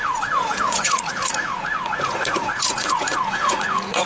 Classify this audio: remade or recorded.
remade